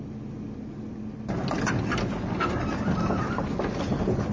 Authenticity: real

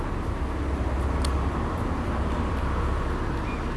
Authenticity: real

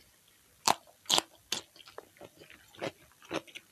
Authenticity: real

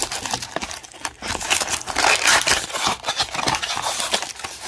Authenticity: real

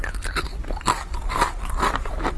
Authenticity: real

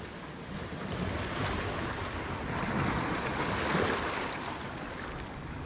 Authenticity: real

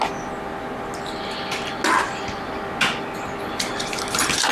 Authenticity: real